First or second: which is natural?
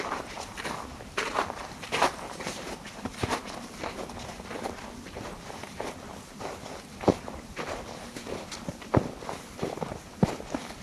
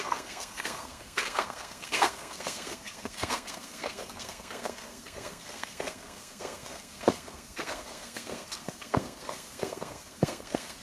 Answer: first